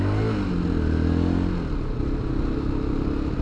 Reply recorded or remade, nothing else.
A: recorded